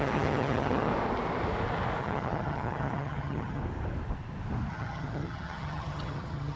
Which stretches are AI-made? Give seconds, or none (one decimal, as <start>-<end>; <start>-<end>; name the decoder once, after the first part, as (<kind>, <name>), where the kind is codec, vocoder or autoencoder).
0.0-0.9 (vocoder, HiFi-GAN); 2.0-3.6; 4.7-6.6